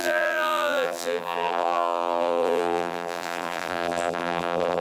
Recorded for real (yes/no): no